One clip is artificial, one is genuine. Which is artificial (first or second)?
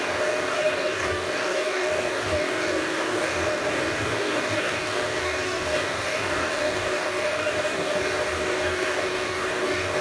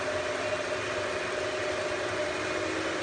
first